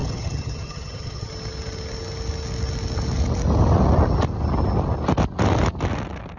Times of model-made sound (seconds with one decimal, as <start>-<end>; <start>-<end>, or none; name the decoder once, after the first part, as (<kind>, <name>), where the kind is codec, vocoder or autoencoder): 0.0-1.3 (vocoder, HiFi-GAN)